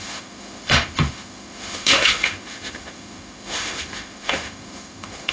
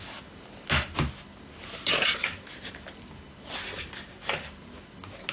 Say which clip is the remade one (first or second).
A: first